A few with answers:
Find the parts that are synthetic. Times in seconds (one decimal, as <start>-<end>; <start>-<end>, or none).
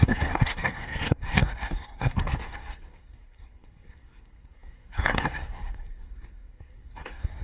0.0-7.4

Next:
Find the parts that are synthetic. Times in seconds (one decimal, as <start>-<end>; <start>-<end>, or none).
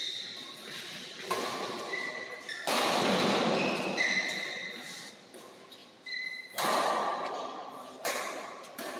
none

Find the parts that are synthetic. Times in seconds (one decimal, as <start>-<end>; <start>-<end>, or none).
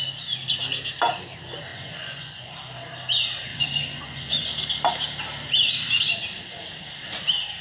1.7-2.5; 3.5-4.5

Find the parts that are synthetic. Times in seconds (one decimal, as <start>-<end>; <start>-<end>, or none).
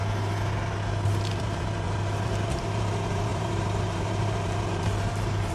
1.4-5.5